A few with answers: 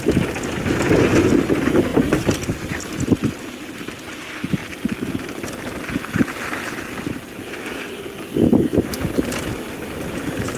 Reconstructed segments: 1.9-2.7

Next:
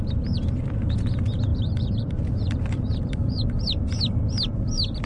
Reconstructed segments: 1.5-3.9

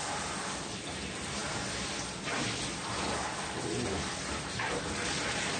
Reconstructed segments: none